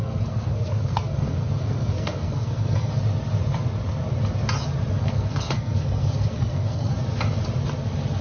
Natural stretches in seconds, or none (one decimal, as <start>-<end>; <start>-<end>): 2.9-5.0; 6.9-8.2